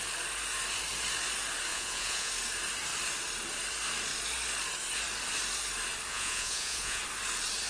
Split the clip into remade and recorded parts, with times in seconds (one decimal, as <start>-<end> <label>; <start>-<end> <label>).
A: 0.0-1.7 recorded; 1.7-2.3 remade; 2.3-6.1 recorded; 6.1-7.0 remade; 7.0-7.7 recorded